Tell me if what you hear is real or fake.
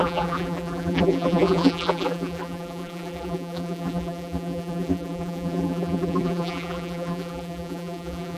fake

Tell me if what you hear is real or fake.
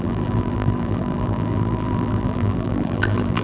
fake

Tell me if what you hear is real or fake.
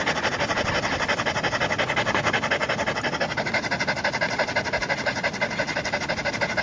real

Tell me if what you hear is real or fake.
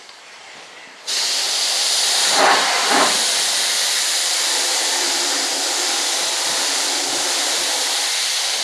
fake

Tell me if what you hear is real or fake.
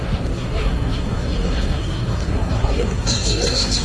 fake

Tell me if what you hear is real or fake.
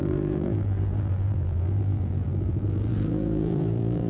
fake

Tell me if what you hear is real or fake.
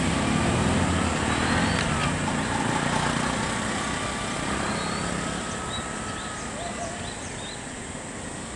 real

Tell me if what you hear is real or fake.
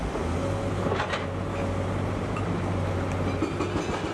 real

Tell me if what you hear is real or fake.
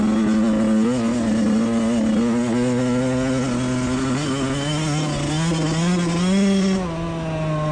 real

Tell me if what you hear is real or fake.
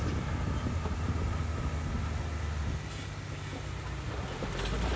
real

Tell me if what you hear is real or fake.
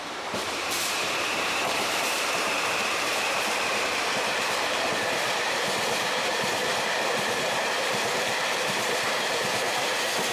fake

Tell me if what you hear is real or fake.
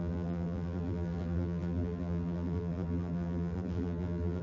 fake